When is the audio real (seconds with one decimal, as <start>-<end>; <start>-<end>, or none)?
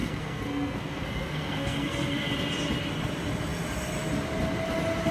2.3-5.1